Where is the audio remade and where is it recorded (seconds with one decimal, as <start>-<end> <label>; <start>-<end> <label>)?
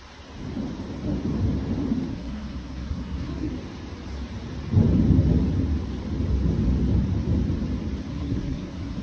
0.0-2.1 recorded; 2.1-3.5 remade; 3.5-8.1 recorded; 8.1-9.0 remade